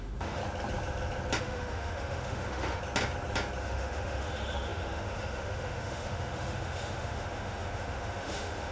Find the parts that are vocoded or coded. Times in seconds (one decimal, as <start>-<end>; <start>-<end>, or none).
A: 0.0-0.4; 1.4-2.8; 3.6-8.7